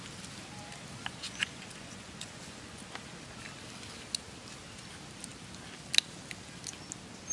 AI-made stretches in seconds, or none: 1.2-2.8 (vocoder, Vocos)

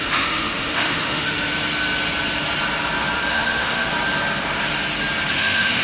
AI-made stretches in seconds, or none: 0.0-1.5 (autoencoder, DAC-VAE); 3.3-3.9; 5.3-5.8